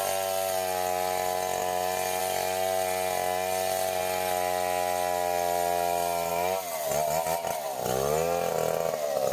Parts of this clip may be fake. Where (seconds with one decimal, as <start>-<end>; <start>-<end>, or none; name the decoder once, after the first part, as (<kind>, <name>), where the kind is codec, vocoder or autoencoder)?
none